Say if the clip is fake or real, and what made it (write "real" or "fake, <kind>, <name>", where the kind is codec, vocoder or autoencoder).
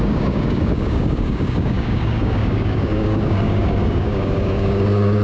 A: fake, codec, DAC